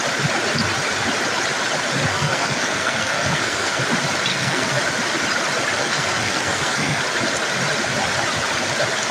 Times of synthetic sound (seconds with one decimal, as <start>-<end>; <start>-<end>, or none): 2.1-3.8; 4.3-4.8; 5.8-7.0